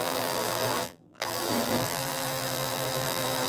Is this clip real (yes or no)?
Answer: no